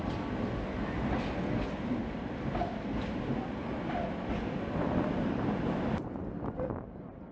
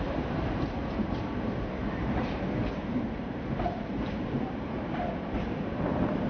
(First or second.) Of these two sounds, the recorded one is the first